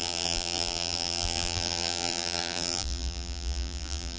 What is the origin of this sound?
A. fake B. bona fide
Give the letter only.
A